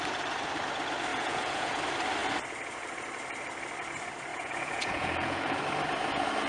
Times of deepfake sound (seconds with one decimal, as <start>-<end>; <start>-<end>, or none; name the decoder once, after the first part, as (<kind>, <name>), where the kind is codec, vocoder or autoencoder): 1.1-1.8 (vocoder, Vocos); 4.3-5.6